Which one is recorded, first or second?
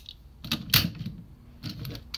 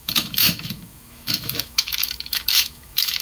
first